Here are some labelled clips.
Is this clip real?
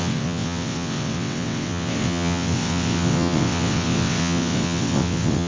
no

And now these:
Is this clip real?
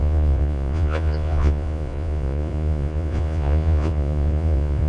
no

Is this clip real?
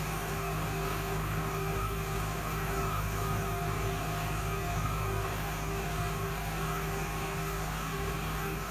no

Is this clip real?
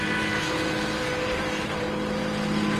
yes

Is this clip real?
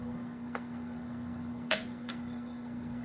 no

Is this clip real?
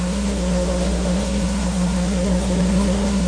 no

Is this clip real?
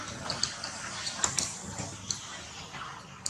yes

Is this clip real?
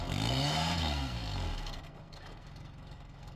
no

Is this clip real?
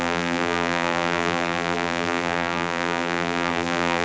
no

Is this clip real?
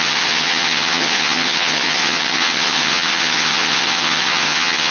no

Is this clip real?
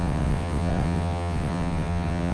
no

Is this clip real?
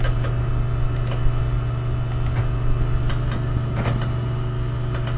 yes